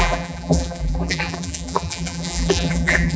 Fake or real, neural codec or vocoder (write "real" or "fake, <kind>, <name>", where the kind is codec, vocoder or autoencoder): fake, vocoder, BigVGAN v2